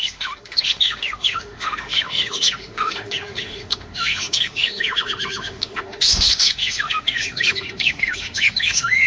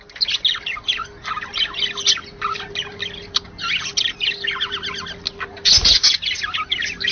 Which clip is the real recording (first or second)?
second